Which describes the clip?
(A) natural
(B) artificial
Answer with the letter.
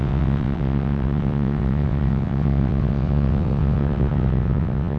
B